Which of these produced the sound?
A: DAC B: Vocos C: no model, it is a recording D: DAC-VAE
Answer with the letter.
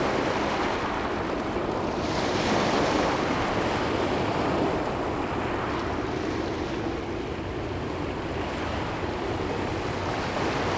C